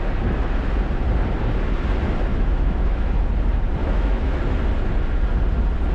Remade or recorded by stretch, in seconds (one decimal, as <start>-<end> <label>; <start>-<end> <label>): 0.0-2.3 recorded; 2.3-3.1 remade; 3.1-3.8 recorded; 3.8-4.4 remade; 4.4-5.9 recorded